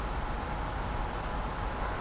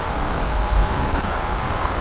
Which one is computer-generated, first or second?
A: second